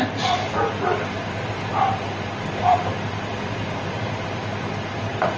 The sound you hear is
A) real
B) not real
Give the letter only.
B